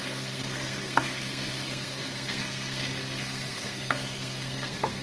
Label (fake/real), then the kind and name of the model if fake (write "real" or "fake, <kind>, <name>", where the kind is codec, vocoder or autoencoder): fake, codec, SNAC